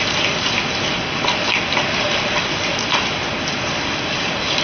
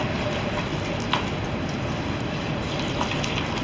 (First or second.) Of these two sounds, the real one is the second